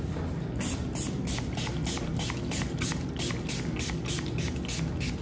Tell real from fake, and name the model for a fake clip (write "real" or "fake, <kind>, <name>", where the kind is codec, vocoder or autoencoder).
real